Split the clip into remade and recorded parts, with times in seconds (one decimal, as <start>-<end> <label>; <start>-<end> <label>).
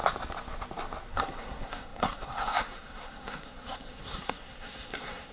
0.0-1.1 recorded; 1.1-5.3 remade